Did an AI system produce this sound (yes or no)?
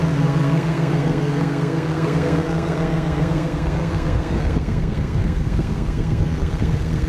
yes